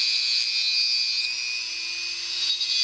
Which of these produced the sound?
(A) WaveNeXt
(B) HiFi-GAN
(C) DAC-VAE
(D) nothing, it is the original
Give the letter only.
D